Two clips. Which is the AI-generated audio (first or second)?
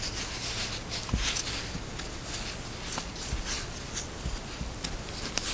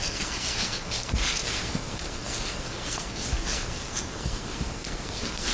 second